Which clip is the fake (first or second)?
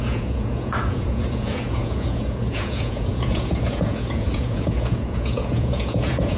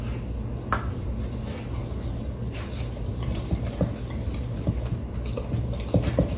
first